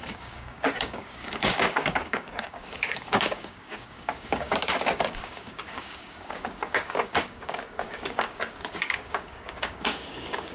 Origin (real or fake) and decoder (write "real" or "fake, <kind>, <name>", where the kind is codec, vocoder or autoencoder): fake, codec, DAC